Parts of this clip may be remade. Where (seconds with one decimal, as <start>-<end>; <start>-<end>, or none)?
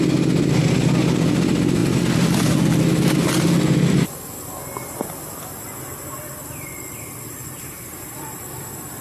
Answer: none